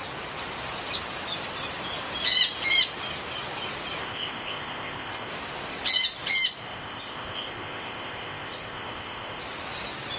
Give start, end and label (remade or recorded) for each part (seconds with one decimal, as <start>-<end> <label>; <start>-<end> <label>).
0.0-4.0 recorded; 4.0-5.3 remade; 5.3-6.6 recorded; 6.6-9.4 remade; 9.4-10.2 recorded